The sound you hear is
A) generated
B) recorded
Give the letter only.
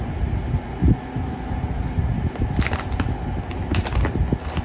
B